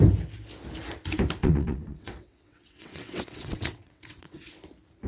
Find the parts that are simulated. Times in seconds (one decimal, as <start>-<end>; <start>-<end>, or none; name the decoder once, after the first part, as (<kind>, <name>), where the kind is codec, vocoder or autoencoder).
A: 1.4-4.5 (vocoder, WaveNeXt)